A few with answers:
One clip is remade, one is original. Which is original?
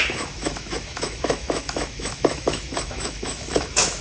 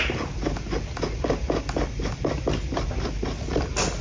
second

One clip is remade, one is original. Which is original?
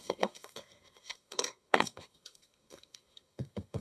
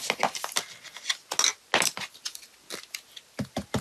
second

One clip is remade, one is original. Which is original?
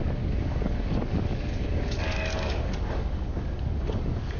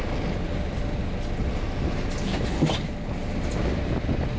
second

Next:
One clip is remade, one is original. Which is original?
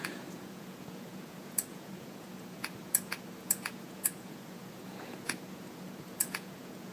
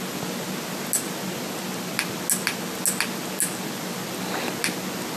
second